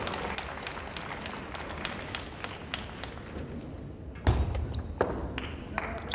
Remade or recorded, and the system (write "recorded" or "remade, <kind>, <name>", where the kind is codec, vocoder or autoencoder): recorded